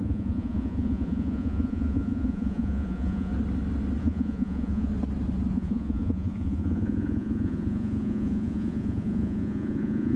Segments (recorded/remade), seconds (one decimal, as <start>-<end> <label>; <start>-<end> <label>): 0.0-3.3 remade; 3.3-4.0 recorded; 4.0-4.9 remade; 4.9-5.5 recorded; 5.5-10.2 remade